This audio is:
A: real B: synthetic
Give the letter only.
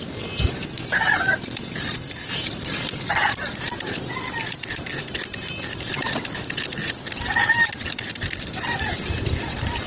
B